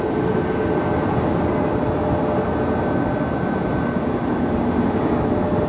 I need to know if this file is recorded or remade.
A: recorded